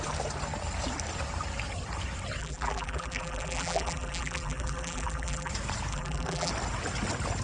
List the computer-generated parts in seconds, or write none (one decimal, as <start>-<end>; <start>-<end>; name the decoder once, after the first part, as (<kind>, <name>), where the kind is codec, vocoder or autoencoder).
2.4-5.5 (vocoder, BigVGAN v2); 5.9-6.5